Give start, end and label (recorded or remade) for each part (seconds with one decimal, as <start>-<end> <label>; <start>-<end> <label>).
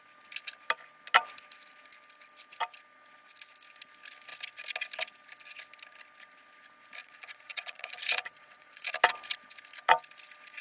0.0-7.0 recorded; 7.0-8.9 remade; 8.9-10.6 recorded